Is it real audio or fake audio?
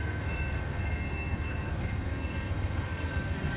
fake